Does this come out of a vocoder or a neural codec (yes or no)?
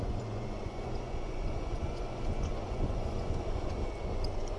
yes